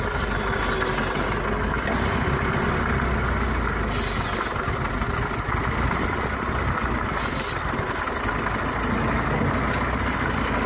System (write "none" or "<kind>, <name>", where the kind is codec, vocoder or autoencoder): none